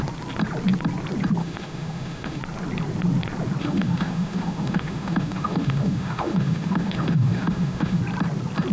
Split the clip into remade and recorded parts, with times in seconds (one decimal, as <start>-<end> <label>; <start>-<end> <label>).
0.0-1.4 recorded; 1.4-2.4 remade; 2.4-3.6 recorded; 3.6-8.0 remade; 8.0-8.7 recorded